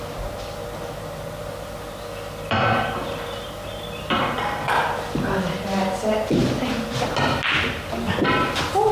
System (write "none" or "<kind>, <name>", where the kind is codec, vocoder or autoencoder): vocoder, BigVGAN v2